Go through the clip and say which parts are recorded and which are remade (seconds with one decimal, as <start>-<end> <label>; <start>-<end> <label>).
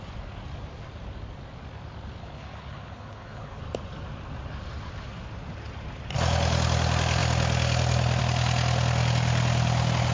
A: 0.0-2.2 recorded; 2.2-3.6 remade; 3.6-10.1 recorded